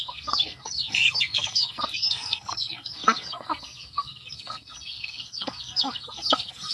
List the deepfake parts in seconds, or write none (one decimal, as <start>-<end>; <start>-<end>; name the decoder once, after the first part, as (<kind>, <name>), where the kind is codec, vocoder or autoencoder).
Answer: 0.0-6.7 (codec, SNAC)